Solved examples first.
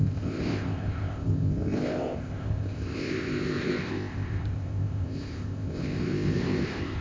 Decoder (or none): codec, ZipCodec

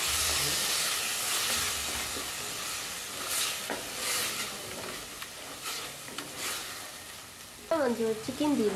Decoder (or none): none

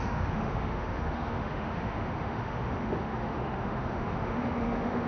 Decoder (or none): autoencoder, DAC-VAE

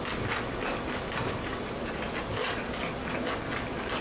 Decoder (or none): none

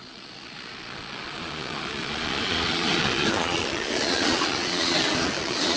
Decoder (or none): vocoder, Vocos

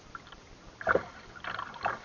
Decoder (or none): none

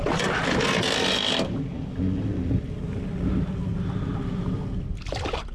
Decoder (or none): none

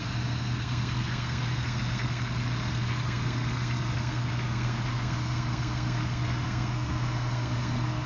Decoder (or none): codec, SNAC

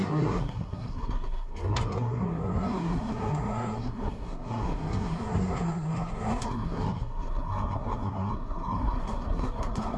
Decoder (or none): codec, SNAC